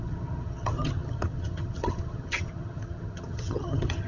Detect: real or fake fake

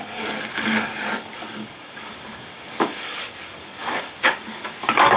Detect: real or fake fake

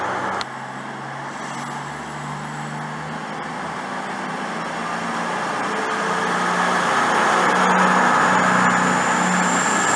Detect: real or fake real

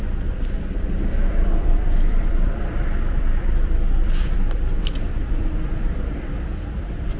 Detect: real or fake fake